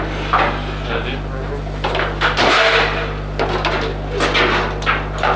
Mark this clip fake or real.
real